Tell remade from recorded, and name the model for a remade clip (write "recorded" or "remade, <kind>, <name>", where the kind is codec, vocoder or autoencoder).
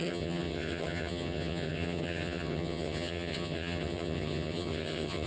remade, vocoder, HiFi-GAN